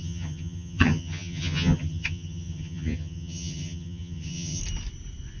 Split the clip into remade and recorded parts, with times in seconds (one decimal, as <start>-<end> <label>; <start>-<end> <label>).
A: 0.0-4.6 remade; 4.6-5.4 recorded